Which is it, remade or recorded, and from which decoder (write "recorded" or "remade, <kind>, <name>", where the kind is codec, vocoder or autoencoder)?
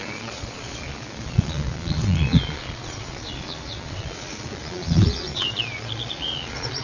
remade, vocoder, Vocos